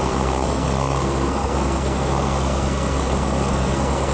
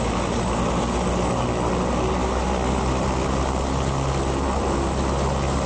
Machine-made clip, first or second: first